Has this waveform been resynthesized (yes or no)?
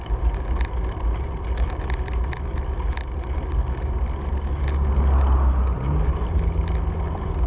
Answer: no